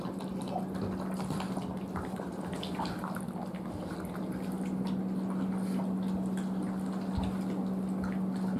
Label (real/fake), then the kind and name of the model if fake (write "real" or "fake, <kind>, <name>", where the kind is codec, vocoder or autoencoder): real